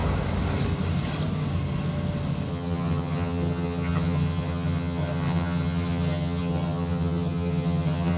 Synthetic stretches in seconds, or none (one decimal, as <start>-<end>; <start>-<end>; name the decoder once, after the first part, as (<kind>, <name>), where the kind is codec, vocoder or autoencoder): 2.5-8.2 (vocoder, HiFi-GAN)